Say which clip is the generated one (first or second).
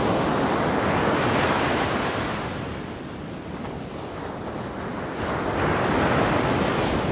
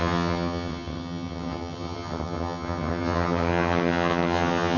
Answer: second